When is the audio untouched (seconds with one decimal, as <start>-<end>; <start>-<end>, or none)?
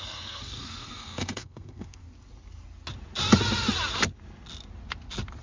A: 2.0-5.4